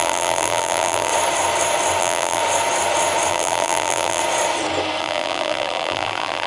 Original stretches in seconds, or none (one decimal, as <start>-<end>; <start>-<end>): 1.1-2.0; 2.4-3.3; 4.2-5.0